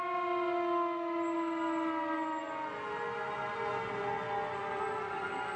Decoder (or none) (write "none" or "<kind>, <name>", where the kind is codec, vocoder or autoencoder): none